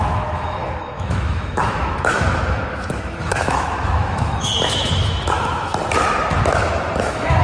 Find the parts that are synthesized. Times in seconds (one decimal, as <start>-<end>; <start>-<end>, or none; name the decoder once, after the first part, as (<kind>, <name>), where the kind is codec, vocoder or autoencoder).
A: 0.0-5.7 (autoencoder, DAC-VAE); 7.0-7.4